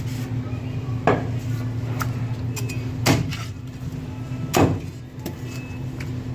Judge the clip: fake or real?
real